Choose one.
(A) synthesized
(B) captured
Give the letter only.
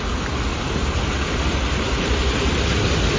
B